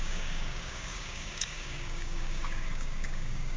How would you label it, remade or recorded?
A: remade